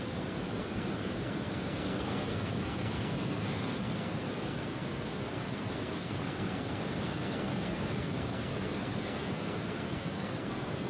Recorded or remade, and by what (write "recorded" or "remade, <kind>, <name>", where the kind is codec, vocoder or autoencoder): remade, codec, SNAC